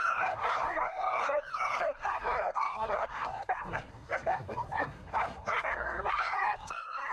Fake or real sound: fake